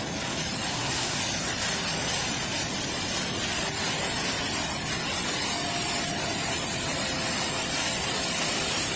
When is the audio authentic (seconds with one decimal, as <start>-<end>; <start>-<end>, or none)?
0.0-0.7; 1.2-9.0